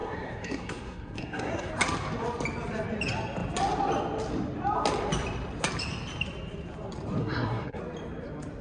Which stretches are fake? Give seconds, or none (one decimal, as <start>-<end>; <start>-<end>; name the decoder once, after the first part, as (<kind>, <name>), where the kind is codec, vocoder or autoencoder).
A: 0.0-1.7 (codec, SNAC); 7.2-7.8